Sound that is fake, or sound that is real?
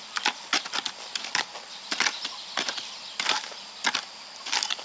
real